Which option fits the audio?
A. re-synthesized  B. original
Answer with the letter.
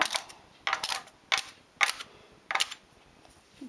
B